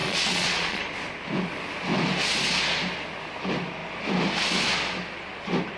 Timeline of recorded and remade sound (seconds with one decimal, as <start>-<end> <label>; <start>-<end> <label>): 0.0-0.8 remade; 0.8-5.8 recorded